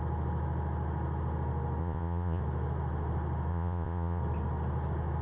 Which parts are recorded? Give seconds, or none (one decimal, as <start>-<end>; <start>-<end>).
0.0-1.8; 2.4-3.5; 4.2-5.2